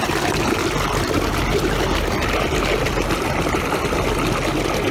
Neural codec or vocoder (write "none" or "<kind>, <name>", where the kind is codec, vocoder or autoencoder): none